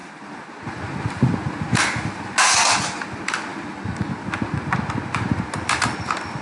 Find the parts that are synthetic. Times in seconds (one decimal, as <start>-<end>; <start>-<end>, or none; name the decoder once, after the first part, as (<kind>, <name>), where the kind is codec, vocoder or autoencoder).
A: none